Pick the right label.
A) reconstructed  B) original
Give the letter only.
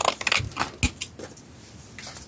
B